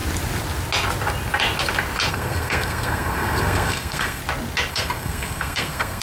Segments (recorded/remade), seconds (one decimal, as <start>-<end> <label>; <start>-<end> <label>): 0.0-2.1 recorded; 2.1-4.2 remade; 4.2-4.7 recorded; 4.7-6.0 remade